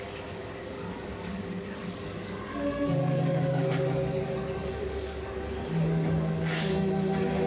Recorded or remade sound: remade